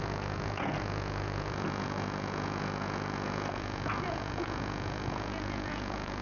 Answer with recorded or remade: remade